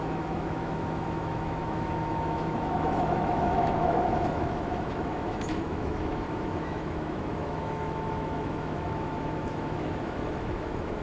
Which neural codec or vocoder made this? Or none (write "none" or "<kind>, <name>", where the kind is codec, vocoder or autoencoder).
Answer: autoencoder, DAC-VAE